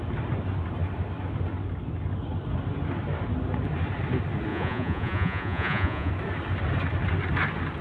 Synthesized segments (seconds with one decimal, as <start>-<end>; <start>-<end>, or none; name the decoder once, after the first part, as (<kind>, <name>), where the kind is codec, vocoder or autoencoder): 4.5-6.1 (vocoder, Vocos)